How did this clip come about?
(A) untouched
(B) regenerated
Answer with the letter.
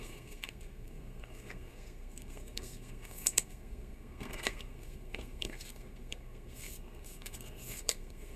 B